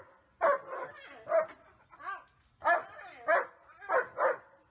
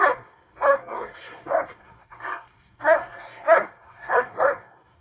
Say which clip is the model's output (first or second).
second